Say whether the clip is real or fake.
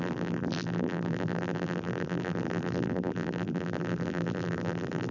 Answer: fake